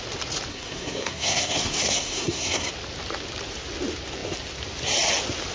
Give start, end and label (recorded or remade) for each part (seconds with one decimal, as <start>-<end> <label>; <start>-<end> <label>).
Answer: 0.0-0.5 recorded; 0.5-2.7 remade; 2.7-5.5 recorded